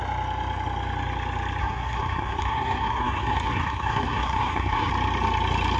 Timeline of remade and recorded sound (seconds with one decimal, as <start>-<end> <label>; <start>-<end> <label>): 0.0-1.6 recorded; 1.6-4.9 remade; 4.9-5.8 recorded